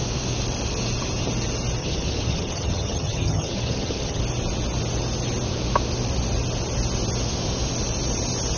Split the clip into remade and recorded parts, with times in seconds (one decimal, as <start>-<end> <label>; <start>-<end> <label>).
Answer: 0.0-1.8 recorded; 1.8-4.2 remade; 4.2-8.6 recorded